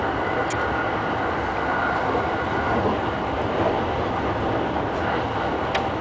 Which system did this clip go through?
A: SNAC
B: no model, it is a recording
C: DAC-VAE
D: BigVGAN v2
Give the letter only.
B